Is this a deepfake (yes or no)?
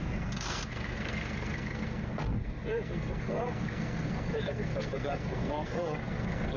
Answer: yes